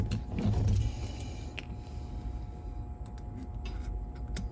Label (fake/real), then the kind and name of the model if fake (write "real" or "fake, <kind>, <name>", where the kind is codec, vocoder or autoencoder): real